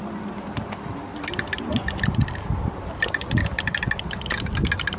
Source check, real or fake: real